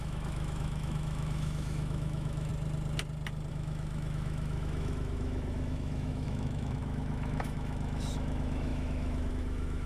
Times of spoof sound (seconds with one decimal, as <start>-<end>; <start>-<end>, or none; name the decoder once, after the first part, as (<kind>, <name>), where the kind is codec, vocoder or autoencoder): 0.0-2.5 (autoencoder, DAC-VAE); 3.5-9.9